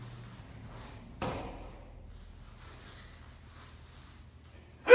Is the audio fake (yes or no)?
no